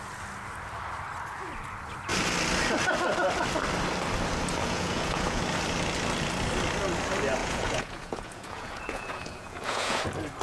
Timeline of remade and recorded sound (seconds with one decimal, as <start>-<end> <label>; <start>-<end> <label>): 0.0-4.6 recorded; 4.6-5.4 remade; 5.4-7.4 recorded; 7.4-10.0 remade; 10.0-10.4 recorded